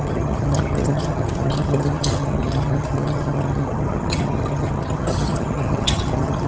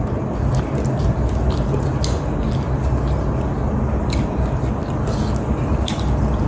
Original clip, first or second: second